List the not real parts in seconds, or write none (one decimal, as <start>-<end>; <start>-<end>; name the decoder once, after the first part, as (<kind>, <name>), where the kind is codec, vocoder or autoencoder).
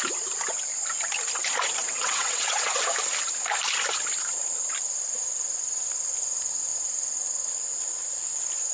1.8-2.8 (vocoder, WaveNeXt)